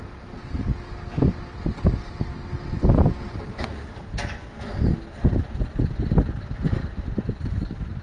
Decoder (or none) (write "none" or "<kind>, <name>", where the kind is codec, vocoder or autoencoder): none